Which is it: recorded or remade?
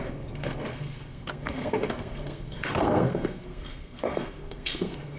remade